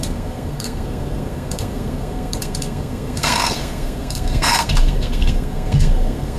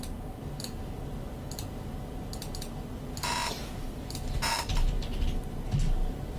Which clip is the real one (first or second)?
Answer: second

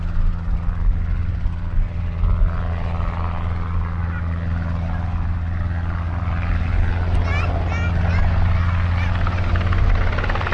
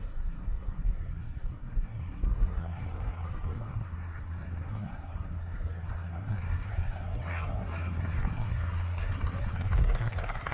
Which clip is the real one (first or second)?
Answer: first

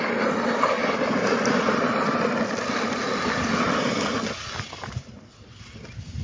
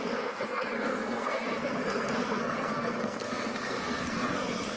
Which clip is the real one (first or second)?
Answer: first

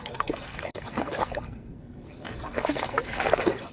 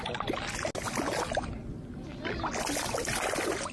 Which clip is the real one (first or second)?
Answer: second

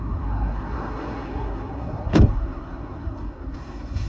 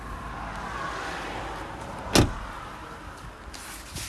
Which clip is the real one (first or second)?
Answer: second